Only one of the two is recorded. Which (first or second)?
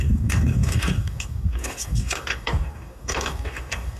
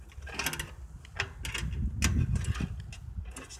second